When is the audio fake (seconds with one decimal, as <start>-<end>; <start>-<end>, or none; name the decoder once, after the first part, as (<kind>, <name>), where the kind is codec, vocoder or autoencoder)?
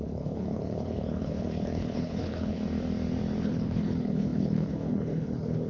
0.0-2.6 (codec, HILCodec); 3.4-5.7